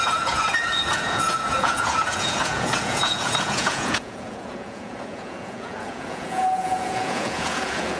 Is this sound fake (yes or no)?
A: yes